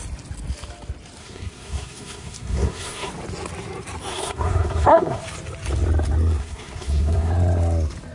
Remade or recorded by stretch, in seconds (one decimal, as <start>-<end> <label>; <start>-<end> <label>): 0.0-1.2 recorded; 1.2-3.1 remade; 3.1-4.1 recorded; 4.1-5.2 remade; 5.2-6.4 recorded; 6.4-7.3 remade; 7.3-8.1 recorded